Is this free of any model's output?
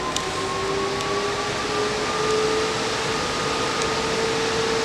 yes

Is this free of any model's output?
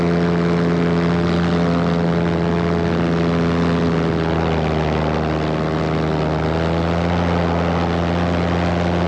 yes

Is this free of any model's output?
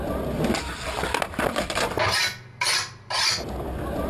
yes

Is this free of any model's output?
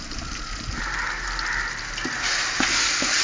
yes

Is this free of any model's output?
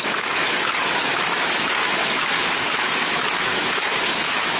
no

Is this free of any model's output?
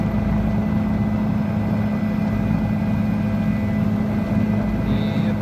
yes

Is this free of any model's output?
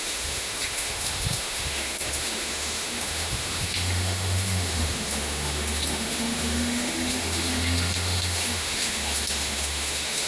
no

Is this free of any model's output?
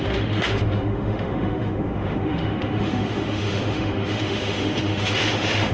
no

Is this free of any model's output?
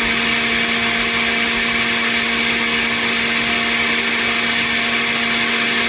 yes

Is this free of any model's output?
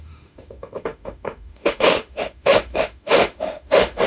no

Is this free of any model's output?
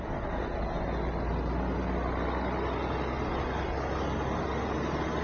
yes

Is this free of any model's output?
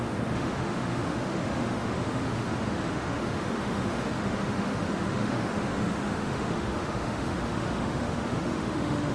no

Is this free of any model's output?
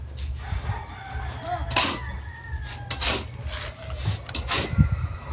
yes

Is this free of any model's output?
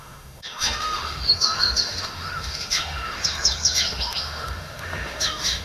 no